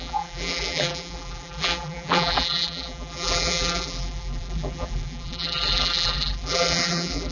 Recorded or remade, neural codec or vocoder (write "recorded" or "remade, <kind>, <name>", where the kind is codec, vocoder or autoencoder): remade, vocoder, BigVGAN v2